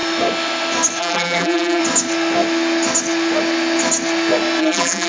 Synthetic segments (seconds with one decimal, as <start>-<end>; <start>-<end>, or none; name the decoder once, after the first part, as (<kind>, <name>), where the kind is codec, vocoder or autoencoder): 1.0-1.8 (vocoder, BigVGAN v2); 4.6-5.1